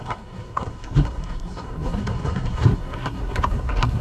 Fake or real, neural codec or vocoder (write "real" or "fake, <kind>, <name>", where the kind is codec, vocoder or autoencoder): fake, codec, SNAC